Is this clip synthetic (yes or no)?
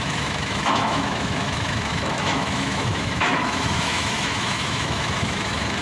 yes